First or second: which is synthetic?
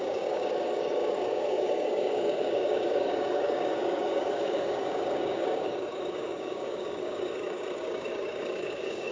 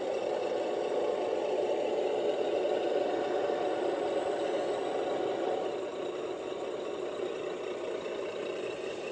first